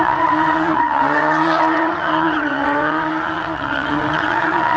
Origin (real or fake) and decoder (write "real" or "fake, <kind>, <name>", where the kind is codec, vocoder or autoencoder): fake, vocoder, WaveNeXt